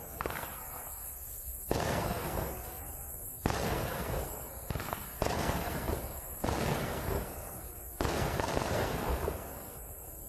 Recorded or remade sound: remade